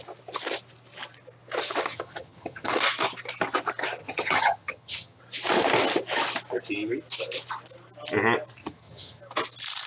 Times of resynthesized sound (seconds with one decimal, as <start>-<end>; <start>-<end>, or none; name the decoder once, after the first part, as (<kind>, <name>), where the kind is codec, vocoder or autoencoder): 1.9-2.7 (vocoder, HiFi-GAN); 4.0-5.2; 8.6-9.2